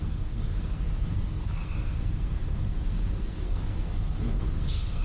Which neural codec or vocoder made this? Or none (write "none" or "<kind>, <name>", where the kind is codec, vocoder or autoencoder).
codec, SNAC